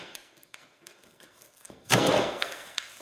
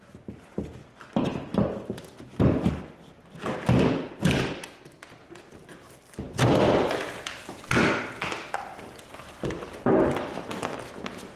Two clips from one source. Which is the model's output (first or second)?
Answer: first